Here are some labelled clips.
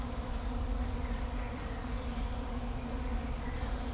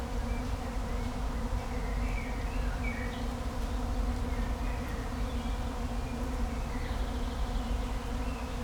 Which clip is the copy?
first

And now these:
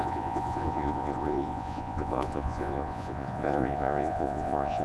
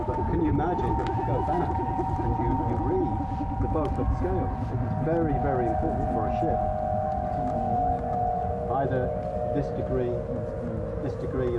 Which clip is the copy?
first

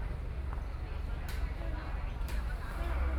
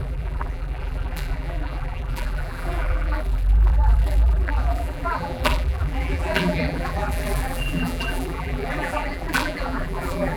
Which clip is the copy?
second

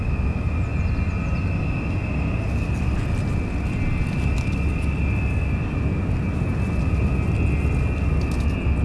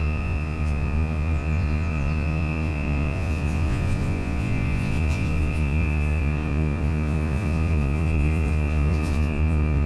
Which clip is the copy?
second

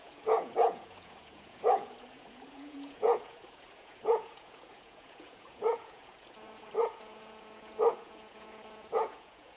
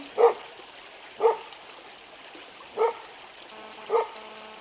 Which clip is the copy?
first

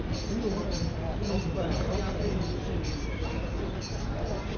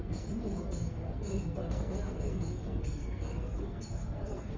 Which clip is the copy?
second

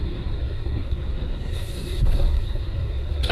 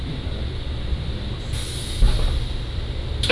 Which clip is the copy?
first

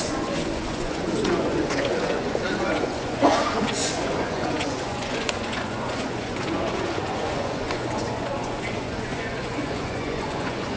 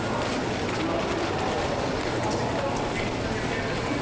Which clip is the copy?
first